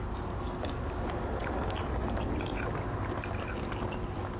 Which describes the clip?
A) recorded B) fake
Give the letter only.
A